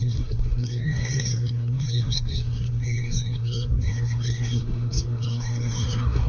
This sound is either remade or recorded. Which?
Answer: remade